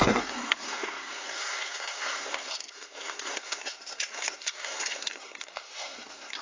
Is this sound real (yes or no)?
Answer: no